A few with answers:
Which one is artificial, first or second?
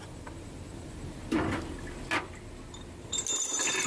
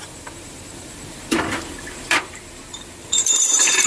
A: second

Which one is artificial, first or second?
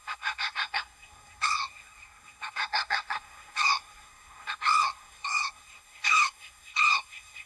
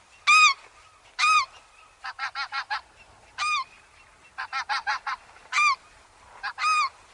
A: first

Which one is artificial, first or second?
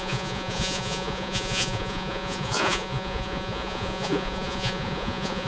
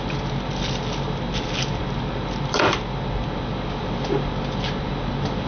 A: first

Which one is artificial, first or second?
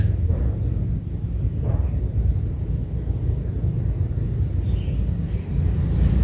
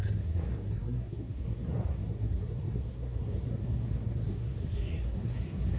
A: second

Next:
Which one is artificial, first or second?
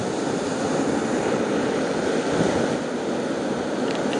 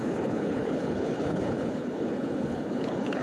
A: second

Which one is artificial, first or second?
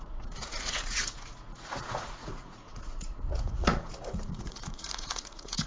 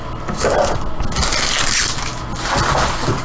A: first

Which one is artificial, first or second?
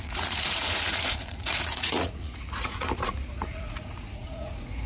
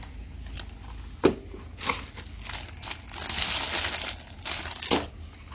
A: first